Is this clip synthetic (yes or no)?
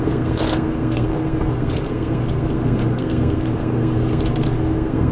yes